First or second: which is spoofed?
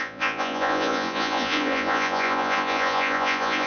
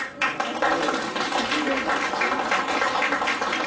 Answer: first